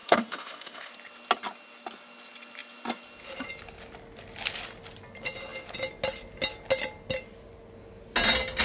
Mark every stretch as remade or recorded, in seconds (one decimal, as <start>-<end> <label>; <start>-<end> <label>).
0.0-0.9 remade; 0.9-8.6 recorded